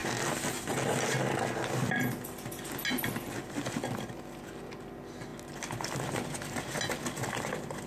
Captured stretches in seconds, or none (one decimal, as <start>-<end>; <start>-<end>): 0.0-7.9